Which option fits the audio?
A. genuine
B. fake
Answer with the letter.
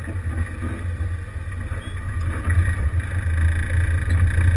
A